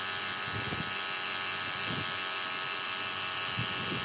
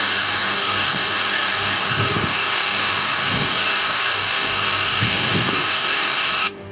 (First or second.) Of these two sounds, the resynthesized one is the second